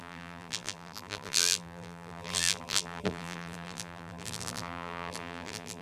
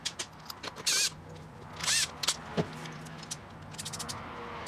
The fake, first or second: first